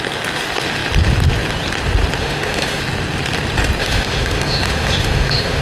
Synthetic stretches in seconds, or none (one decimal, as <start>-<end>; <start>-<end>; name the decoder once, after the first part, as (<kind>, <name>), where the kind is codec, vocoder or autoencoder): 2.2-2.8 (autoencoder, DAC-VAE); 3.8-5.6